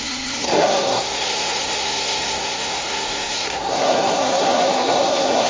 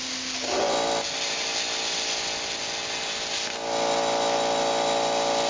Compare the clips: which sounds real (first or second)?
second